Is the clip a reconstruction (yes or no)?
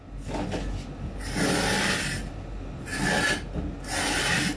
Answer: no